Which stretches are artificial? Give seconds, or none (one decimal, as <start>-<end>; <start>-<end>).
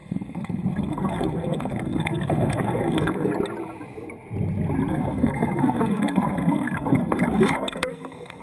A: 0.0-3.3; 4.9-8.4